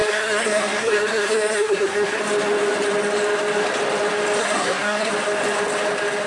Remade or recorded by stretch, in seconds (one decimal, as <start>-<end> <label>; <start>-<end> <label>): 0.0-2.2 remade; 2.2-4.4 recorded; 4.4-5.1 remade; 5.1-6.3 recorded